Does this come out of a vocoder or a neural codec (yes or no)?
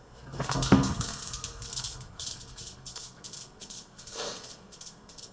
yes